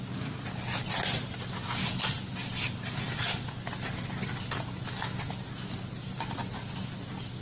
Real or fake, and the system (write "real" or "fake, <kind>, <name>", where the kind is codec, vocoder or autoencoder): real